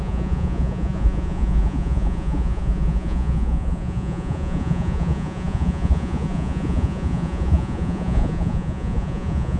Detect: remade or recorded remade